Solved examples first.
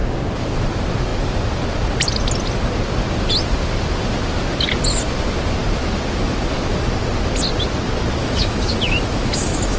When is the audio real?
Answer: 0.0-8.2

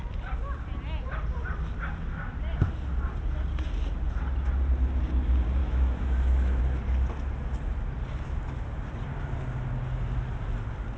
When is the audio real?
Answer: 0.0-5.6; 6.6-11.0

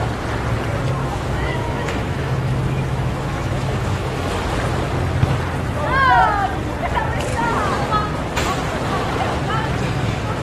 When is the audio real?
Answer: 0.0-1.0; 4.3-10.4

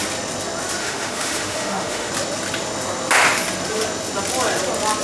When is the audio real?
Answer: 0.0-0.8; 2.1-5.0

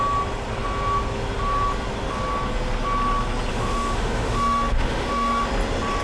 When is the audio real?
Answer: 0.0-3.5; 5.5-6.0

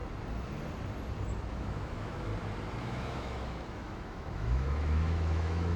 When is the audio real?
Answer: 0.0-1.5; 2.3-2.8

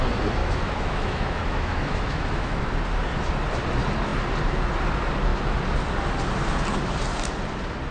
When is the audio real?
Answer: 0.0-0.4; 2.6-7.9

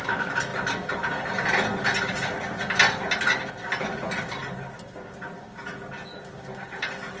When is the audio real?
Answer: 0.0-7.2